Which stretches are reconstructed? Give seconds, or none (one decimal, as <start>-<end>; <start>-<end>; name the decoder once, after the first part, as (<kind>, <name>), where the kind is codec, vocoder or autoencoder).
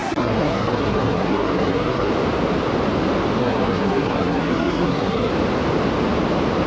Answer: 0.0-2.1 (codec, SNAC); 3.4-5.3